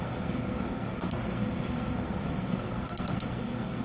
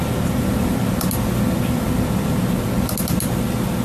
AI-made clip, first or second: first